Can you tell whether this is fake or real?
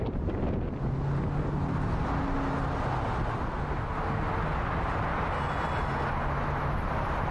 real